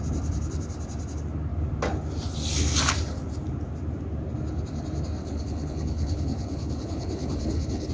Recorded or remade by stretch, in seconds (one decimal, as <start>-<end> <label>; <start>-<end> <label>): 0.0-5.2 recorded; 5.2-7.9 remade